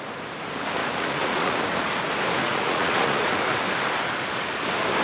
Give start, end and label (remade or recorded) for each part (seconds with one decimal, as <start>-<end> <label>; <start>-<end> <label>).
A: 0.0-0.8 recorded; 0.8-2.0 remade; 2.0-2.4 recorded; 2.4-3.4 remade; 3.4-5.0 recorded